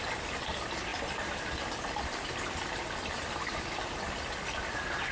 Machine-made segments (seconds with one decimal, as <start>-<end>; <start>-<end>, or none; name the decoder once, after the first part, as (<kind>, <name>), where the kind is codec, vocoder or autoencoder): 0.9-4.0 (vocoder, BigVGAN v2)